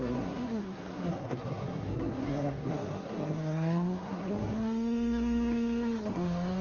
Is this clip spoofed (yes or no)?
yes